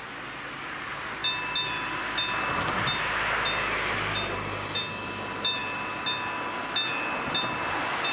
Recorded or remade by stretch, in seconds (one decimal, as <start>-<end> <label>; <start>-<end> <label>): 0.0-8.1 recorded